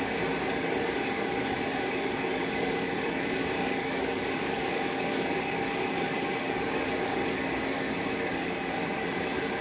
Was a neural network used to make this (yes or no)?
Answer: yes